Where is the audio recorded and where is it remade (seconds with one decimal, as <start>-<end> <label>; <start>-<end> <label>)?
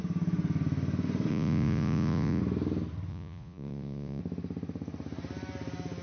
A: 0.0-1.3 recorded; 1.3-2.4 remade; 2.4-3.1 recorded; 3.1-4.2 remade; 4.2-6.0 recorded